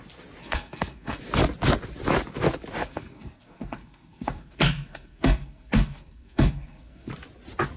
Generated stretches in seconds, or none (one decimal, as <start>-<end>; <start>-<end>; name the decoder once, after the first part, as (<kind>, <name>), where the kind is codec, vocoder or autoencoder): 0.4-1.2 (codec, SNAC); 2.8-7.1